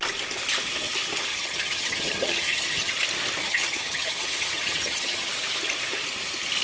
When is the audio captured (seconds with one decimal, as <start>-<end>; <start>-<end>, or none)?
0.0-1.3; 2.9-3.4; 5.3-6.6